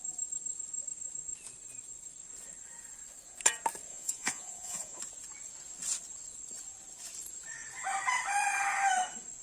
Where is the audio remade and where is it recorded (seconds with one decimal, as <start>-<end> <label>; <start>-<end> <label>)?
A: 0.0-3.9 recorded; 3.9-5.0 remade; 5.0-9.4 recorded